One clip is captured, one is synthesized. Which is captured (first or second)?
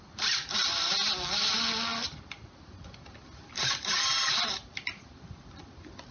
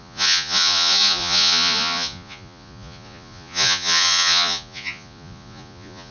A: first